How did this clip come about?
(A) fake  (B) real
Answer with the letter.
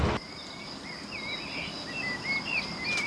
B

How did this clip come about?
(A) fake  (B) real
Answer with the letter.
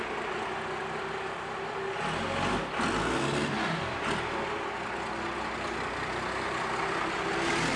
B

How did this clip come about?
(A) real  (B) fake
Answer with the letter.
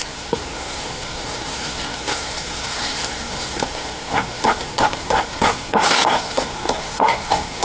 B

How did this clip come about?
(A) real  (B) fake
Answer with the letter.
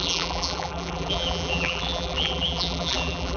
B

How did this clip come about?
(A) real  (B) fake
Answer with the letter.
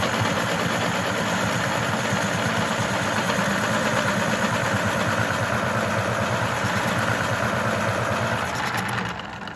A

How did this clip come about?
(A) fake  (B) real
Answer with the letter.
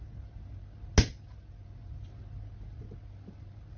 B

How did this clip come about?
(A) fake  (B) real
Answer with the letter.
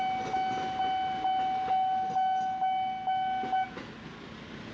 B